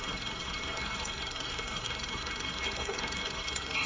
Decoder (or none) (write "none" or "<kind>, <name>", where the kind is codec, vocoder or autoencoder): codec, SNAC